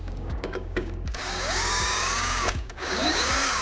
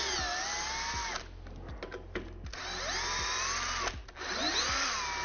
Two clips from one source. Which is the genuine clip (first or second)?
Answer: second